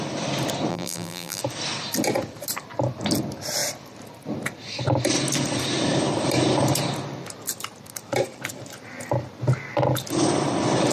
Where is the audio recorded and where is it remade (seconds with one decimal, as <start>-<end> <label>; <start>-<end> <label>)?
0.0-0.7 recorded; 0.7-1.4 remade; 1.4-10.9 recorded